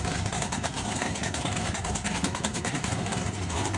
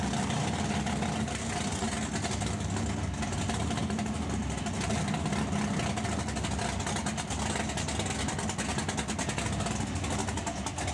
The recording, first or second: second